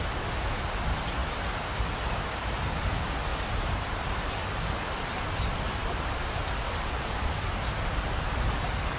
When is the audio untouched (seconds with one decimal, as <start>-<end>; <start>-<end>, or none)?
0.0-5.8; 7.6-9.0